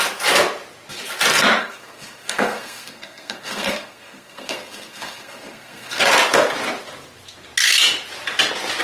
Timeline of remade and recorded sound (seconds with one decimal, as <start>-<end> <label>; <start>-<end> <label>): 0.0-1.6 recorded; 1.6-6.0 remade; 6.0-8.8 recorded